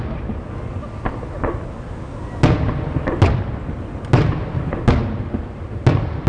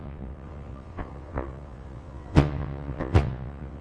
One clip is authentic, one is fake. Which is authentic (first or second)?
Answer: first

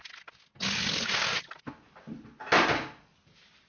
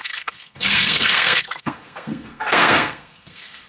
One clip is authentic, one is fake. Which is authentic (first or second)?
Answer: first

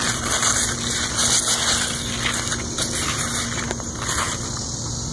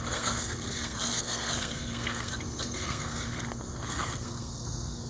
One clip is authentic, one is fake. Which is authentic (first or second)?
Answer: first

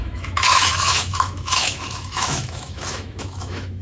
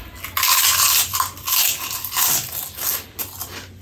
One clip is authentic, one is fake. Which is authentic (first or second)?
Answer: second